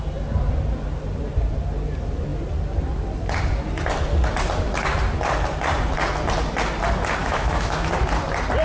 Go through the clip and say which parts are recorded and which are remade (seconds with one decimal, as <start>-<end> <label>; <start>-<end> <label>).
0.0-7.2 recorded; 7.2-7.9 remade; 7.9-8.6 recorded